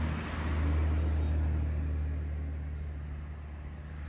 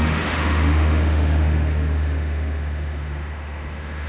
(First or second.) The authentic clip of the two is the first